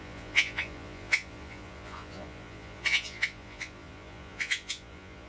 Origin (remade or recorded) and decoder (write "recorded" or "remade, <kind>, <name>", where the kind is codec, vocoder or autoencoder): remade, vocoder, Vocos